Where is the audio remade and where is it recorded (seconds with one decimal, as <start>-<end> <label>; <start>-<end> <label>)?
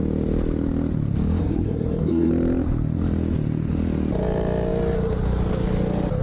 0.0-1.4 recorded; 1.4-2.3 remade; 2.3-6.2 recorded